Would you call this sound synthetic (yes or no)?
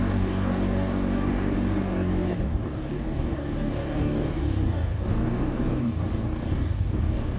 yes